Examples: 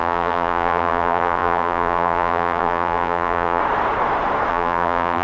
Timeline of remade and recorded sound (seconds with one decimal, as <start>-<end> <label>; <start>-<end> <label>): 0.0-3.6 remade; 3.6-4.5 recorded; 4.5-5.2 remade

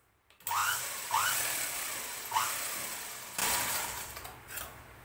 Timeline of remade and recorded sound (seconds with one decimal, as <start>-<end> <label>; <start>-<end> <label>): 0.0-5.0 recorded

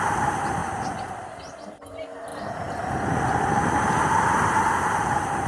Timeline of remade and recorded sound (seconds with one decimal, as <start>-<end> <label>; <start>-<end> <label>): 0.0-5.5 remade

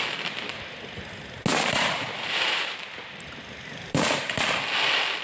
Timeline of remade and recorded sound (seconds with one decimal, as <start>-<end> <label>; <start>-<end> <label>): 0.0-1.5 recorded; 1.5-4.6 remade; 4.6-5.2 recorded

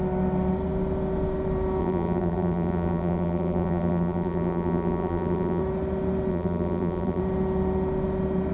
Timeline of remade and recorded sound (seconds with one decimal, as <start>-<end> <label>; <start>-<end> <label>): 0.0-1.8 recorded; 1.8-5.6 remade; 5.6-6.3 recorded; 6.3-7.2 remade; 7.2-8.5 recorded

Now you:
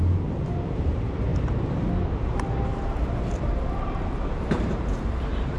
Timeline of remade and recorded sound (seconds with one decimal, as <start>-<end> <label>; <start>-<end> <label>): 0.0-1.3 remade; 1.3-2.1 recorded; 2.1-5.6 remade

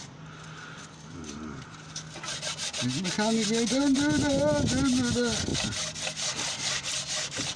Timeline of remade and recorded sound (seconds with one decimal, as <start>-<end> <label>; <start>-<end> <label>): 0.0-7.6 recorded

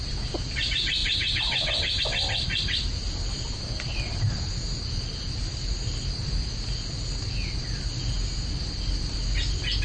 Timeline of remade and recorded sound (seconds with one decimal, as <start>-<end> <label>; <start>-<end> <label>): 0.0-1.0 recorded; 1.0-2.0 remade; 2.0-9.8 recorded